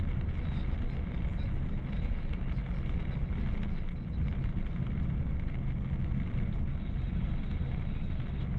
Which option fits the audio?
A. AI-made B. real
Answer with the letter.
B